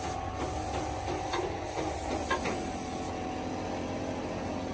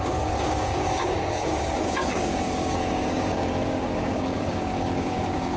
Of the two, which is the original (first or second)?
first